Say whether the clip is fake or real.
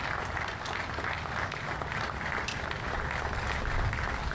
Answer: real